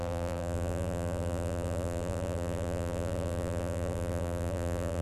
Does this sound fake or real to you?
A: fake